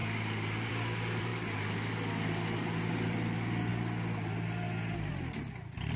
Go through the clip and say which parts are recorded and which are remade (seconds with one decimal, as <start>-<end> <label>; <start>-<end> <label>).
0.0-0.7 recorded; 0.7-1.3 remade; 1.3-2.9 recorded; 2.9-3.7 remade; 3.7-5.1 recorded; 5.1-6.0 remade